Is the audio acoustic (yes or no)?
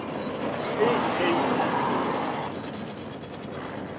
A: yes